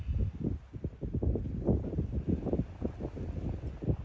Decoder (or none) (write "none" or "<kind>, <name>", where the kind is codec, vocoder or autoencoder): none